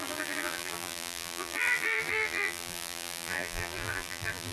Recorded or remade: remade